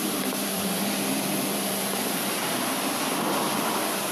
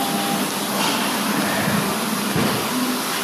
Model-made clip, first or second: first